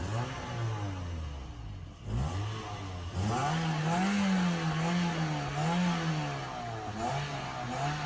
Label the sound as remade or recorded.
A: recorded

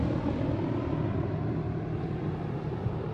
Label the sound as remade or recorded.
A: recorded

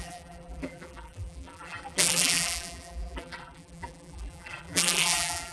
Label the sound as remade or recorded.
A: remade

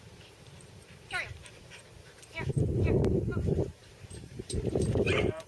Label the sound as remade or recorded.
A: remade